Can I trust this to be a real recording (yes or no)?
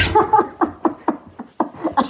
yes